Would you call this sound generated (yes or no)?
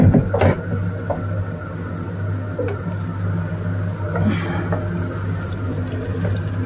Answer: no